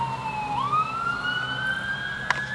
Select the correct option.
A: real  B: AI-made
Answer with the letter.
A